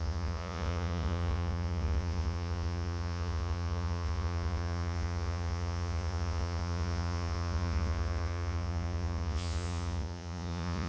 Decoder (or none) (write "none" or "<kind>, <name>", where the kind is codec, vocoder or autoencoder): vocoder, Vocos